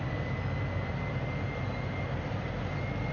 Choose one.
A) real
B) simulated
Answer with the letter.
A